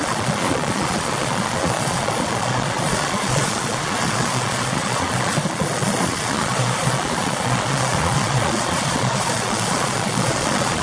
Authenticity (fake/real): fake